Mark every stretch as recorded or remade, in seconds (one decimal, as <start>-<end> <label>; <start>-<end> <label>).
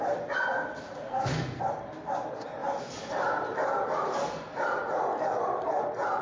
0.0-1.0 recorded; 1.0-1.6 remade; 1.6-6.2 recorded